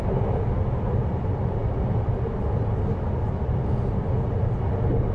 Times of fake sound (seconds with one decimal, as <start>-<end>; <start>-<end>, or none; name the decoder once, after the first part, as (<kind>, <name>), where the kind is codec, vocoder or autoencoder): none